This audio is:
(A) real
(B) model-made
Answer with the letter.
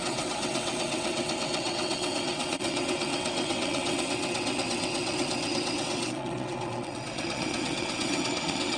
B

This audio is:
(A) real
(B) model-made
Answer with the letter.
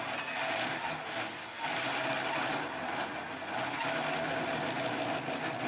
A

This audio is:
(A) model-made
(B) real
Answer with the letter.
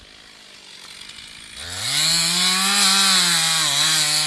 B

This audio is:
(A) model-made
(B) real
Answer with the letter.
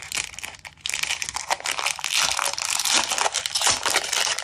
B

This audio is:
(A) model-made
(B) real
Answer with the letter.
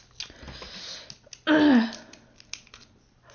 B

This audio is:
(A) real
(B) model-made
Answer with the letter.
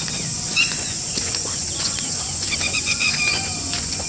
B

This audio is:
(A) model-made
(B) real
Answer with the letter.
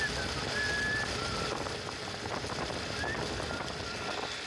B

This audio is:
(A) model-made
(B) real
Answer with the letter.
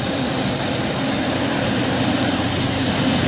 B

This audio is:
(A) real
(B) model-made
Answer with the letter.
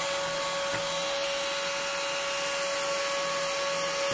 A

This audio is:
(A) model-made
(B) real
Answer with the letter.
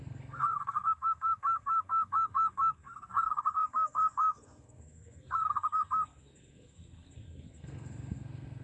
A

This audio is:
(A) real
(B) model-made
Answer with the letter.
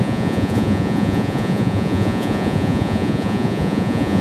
B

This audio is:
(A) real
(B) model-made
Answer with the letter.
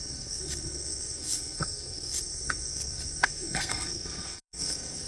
B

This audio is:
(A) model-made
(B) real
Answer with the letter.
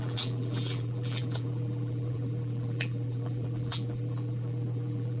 A